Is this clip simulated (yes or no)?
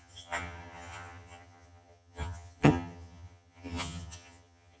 yes